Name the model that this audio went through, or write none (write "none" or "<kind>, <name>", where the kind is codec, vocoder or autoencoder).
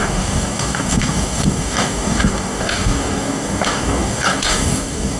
codec, DAC